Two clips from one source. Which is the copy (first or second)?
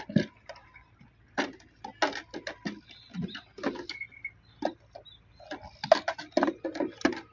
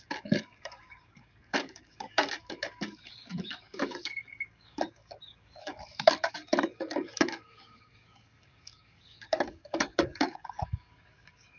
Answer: second